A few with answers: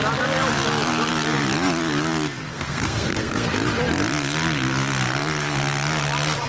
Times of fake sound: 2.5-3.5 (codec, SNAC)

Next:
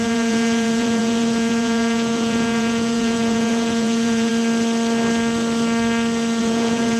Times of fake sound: 0.0-4.3 (vocoder, Vocos); 6.4-7.0

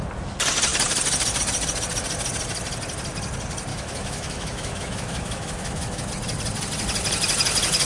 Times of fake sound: 3.7-6.1 (autoencoder, DAC-VAE)

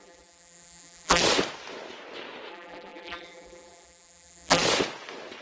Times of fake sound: 0.0-1.2 (vocoder, BigVGAN v2); 2.5-4.6

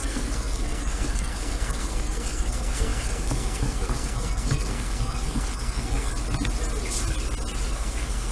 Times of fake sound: 0.0-6.1 (codec, SNAC); 7.7-8.3

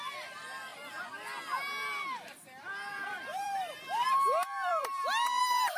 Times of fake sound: 0.0-0.7 (vocoder, BigVGAN v2); 2.9-5.8